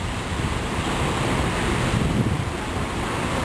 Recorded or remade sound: remade